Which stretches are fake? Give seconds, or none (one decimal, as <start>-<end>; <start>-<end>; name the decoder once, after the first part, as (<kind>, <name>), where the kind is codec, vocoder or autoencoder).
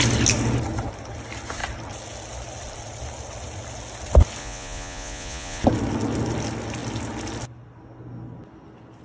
4.4-5.6 (vocoder, Vocos)